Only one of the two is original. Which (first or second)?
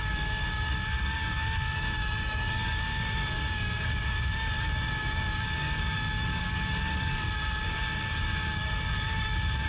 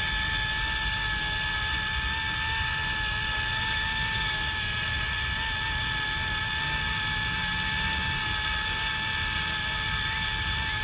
second